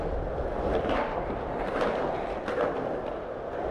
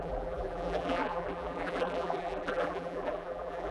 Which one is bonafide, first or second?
first